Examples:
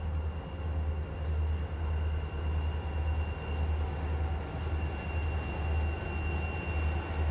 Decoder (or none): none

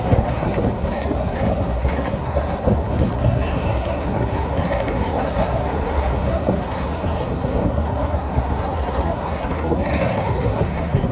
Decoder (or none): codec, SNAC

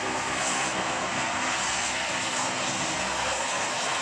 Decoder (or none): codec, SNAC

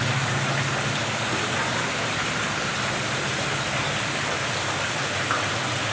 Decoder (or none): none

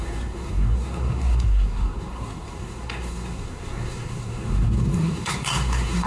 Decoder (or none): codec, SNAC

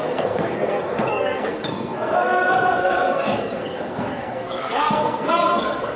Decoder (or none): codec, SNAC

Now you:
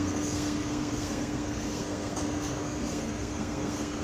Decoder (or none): codec, SNAC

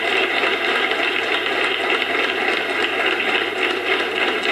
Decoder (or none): none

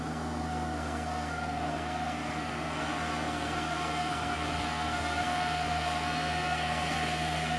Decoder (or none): codec, SNAC